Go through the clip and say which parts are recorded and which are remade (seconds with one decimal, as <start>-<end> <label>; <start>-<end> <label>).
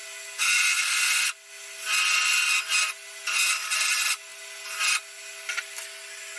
0.0-6.4 recorded